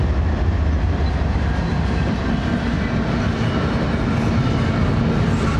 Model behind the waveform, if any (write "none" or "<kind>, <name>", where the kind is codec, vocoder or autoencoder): none